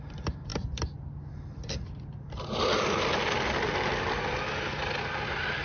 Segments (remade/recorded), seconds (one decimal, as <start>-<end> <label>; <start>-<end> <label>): 0.0-5.6 recorded